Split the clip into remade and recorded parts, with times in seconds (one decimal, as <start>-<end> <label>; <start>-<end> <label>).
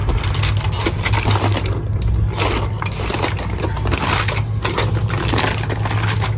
0.0-6.4 recorded